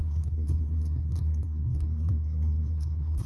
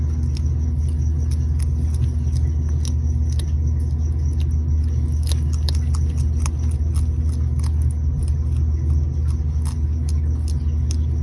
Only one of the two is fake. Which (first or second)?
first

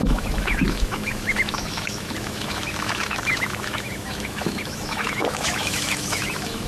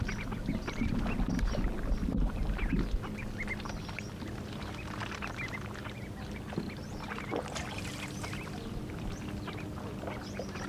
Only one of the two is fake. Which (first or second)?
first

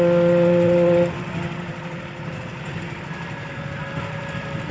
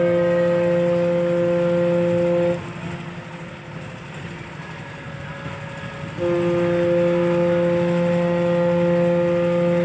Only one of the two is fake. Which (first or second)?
first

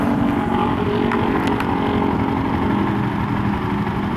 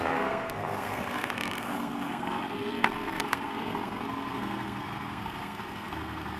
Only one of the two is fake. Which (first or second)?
second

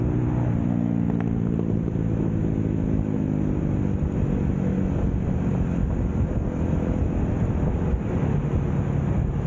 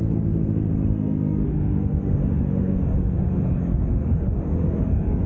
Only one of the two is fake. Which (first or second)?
second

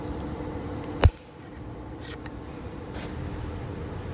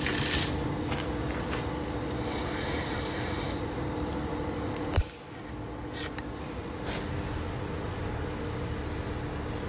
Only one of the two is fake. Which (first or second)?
first